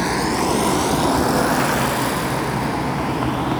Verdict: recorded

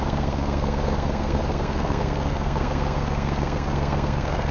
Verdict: remade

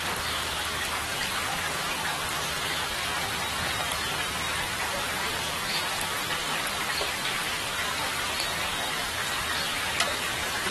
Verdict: remade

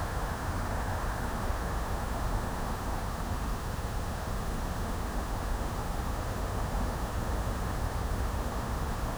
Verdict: remade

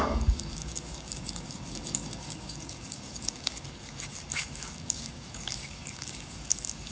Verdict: remade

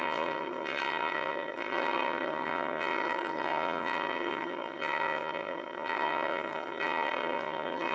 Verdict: remade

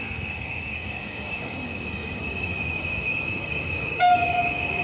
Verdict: remade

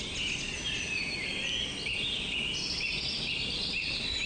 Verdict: recorded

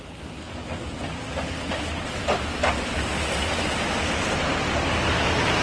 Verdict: recorded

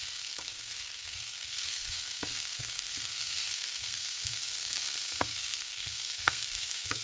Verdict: remade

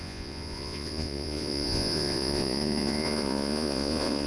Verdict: remade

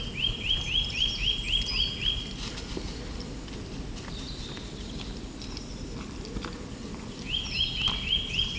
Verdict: recorded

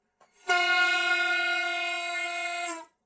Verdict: remade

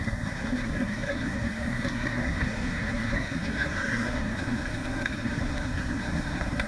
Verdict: remade